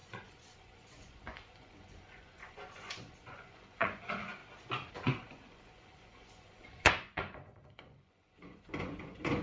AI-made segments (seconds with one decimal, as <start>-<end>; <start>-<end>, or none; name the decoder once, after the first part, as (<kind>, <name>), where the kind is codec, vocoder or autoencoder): 0.0-4.4 (vocoder, Vocos); 4.9-9.4